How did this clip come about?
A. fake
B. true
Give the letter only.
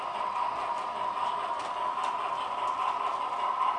B